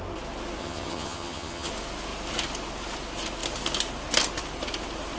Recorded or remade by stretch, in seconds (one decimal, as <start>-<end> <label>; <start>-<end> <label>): 0.0-0.6 recorded; 0.6-1.7 remade; 1.7-5.2 recorded